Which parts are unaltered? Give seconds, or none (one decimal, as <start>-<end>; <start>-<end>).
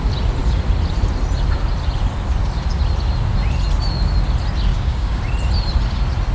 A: 0.0-4.7; 5.2-6.3